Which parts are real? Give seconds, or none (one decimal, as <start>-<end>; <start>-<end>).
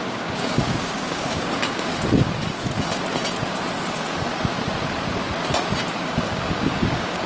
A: 1.9-6.1